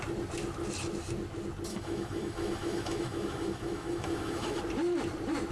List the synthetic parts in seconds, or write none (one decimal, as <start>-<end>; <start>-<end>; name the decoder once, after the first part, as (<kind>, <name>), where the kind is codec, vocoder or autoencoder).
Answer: 1.7-4.6 (autoencoder, DAC-VAE)